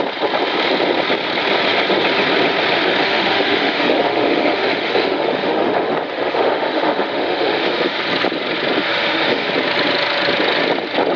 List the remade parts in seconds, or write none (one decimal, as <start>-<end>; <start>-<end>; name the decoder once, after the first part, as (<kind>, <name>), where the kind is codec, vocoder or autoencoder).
3.0-8.0 (autoencoder, DAC-VAE); 8.8-9.5